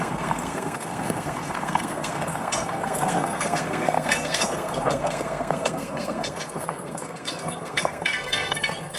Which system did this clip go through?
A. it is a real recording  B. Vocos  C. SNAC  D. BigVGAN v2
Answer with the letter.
C